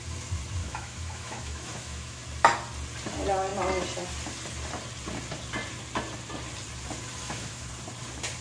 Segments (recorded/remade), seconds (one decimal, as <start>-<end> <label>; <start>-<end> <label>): 0.0-0.6 recorded; 0.6-2.2 remade; 2.2-7.2 recorded; 7.2-7.7 remade; 7.7-8.4 recorded